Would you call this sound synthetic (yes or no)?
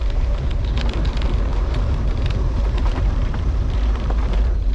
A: yes